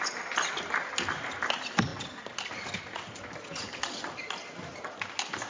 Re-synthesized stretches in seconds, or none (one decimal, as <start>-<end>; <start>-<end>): none